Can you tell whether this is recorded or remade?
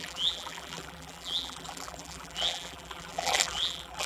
remade